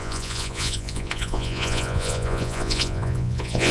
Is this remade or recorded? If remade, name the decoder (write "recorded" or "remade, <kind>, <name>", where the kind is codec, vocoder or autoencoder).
remade, vocoder, Vocos